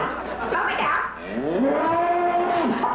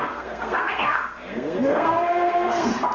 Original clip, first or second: first